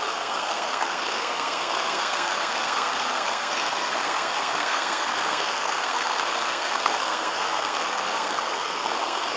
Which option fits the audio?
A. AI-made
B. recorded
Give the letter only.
A